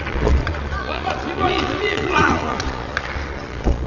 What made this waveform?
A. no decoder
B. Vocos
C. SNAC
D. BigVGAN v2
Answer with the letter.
B